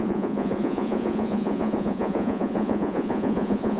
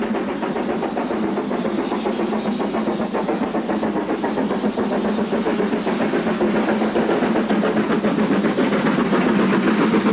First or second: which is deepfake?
first